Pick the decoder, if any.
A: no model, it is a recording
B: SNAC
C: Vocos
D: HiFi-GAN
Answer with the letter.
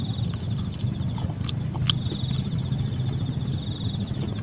A